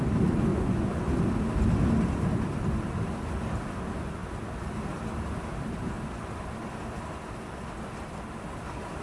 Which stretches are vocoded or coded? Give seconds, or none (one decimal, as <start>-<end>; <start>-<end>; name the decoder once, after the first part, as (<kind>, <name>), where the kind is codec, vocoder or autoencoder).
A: 0.5-1.0 (vocoder, Vocos)